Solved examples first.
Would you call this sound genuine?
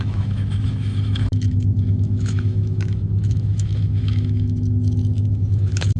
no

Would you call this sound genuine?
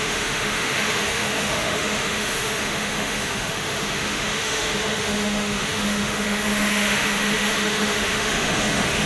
no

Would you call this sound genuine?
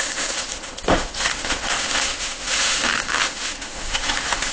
no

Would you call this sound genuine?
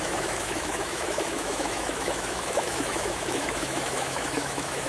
no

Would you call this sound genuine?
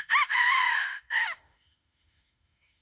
no